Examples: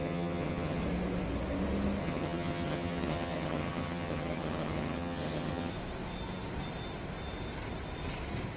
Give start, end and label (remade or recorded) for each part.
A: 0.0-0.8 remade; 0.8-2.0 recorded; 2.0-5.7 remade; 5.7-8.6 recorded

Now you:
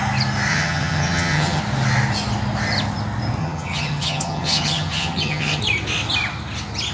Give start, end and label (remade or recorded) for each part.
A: 0.0-0.5 recorded; 0.5-1.6 remade; 1.6-3.4 recorded; 3.4-5.6 remade; 5.6-6.9 recorded